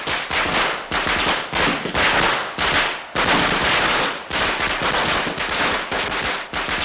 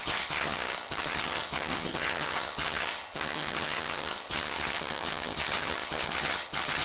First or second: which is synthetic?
second